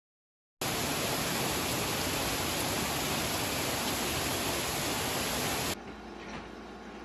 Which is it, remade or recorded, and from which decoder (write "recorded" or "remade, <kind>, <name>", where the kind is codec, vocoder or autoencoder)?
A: recorded